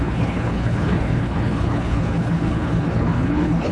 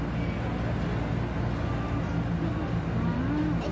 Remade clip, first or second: first